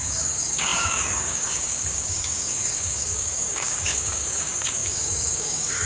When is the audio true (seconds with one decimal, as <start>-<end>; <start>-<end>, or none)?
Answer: none

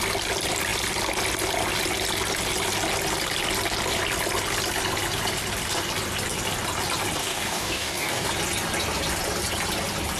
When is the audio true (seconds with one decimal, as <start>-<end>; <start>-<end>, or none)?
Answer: 0.0-7.2; 8.3-10.2